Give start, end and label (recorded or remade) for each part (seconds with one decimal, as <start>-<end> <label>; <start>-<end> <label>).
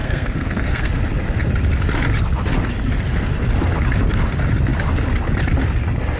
0.0-0.9 remade; 0.9-6.2 recorded